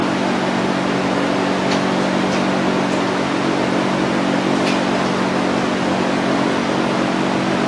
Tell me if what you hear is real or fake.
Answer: real